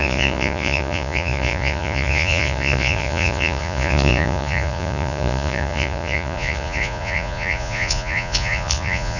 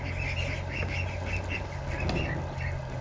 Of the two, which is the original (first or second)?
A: second